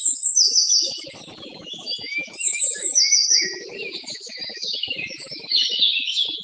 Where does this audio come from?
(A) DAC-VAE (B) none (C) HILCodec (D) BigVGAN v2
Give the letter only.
A